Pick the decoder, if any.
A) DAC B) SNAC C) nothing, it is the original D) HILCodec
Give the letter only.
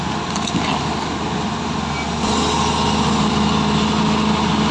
C